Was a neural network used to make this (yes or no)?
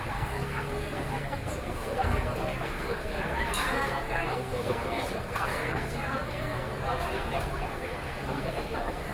yes